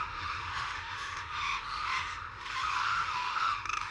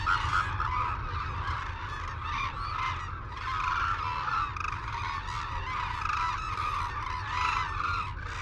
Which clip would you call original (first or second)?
second